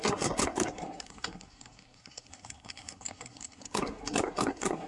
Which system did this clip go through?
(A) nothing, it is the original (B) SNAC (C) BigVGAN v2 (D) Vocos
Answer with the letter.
B